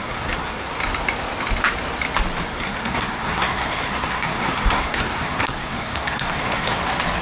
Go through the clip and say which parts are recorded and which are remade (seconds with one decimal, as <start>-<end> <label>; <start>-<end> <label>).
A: 0.0-0.7 remade; 0.7-2.5 recorded; 2.5-6.8 remade; 6.8-7.2 recorded